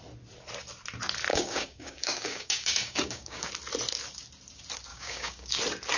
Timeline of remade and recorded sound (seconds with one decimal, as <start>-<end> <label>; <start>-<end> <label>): 0.0-1.3 recorded; 1.3-3.5 remade; 3.5-4.9 recorded; 4.9-5.6 remade; 5.6-6.0 recorded